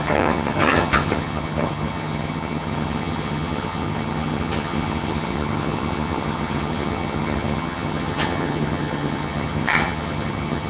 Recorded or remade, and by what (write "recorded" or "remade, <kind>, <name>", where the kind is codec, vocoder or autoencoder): remade, vocoder, HiFi-GAN